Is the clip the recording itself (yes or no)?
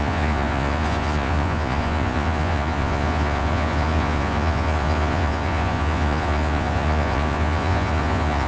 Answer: no